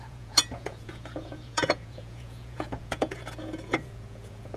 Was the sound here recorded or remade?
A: remade